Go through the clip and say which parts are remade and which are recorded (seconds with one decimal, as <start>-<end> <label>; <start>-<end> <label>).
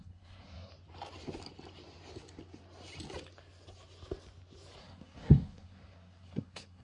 0.0-0.7 remade; 0.7-4.8 recorded; 4.8-6.8 remade